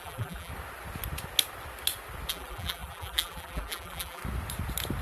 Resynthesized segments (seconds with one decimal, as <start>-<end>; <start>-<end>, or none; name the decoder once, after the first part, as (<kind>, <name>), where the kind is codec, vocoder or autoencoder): 0.0-0.5 (vocoder, BigVGAN v2); 2.3-4.2